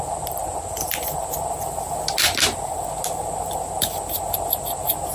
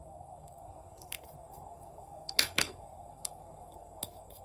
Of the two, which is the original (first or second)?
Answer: first